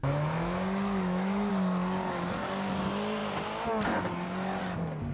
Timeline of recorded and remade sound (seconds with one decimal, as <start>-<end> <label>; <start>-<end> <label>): 0.0-1.5 remade; 1.5-5.1 recorded